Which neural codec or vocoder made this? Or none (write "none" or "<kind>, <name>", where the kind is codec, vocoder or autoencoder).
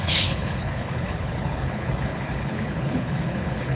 codec, HILCodec